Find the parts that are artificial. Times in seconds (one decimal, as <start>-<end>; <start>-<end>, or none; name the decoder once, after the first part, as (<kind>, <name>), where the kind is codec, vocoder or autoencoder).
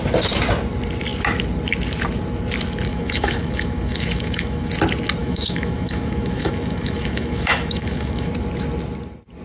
2.9-4.7 (autoencoder, DAC-VAE); 5.2-8.3